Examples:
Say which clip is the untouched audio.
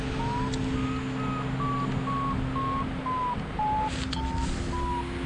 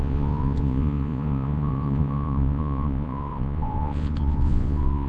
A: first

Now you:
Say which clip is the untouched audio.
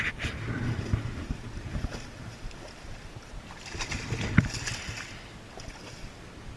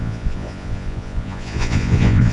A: first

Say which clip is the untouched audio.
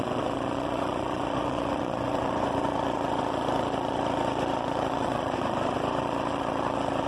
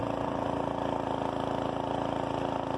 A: second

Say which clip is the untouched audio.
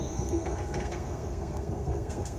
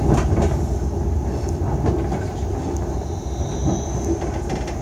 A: second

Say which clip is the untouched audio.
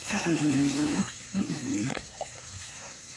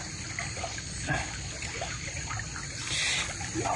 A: second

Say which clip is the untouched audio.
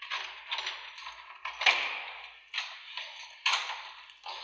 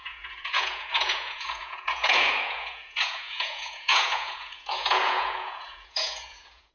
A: first